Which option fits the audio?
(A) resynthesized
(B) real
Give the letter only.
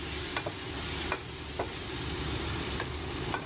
B